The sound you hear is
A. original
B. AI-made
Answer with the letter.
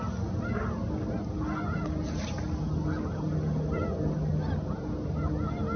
A